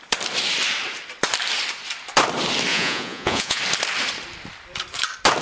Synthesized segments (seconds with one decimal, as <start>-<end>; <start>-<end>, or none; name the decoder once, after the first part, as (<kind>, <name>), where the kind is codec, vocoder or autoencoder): 2.7-3.6 (vocoder, Vocos)